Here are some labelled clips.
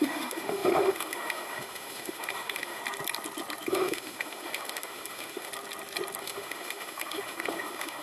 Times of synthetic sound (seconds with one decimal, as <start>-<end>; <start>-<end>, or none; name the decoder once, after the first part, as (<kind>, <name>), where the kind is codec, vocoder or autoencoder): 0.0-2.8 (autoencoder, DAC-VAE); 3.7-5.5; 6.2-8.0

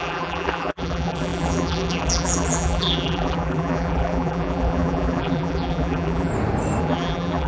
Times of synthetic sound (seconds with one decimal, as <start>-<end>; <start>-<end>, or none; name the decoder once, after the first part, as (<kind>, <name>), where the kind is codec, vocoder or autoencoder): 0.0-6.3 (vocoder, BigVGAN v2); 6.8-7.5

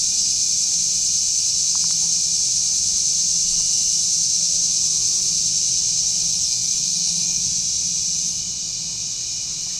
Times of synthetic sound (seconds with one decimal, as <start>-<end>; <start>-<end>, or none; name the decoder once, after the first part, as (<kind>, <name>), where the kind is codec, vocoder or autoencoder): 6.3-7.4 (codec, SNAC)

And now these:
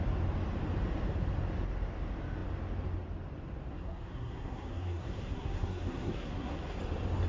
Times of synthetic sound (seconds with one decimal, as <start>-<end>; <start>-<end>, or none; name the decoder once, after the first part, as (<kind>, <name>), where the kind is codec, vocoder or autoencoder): 3.7-6.8 (codec, SNAC)